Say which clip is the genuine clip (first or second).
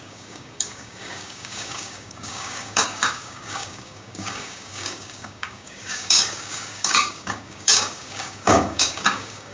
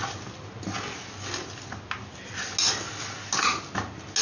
second